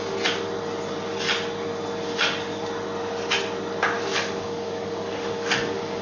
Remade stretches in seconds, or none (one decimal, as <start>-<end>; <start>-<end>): 4.1-6.0